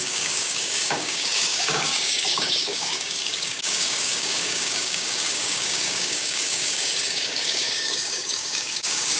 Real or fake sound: fake